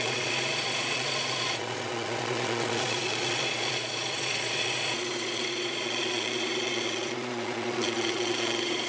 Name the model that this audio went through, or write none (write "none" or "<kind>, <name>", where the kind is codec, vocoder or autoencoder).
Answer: vocoder, Vocos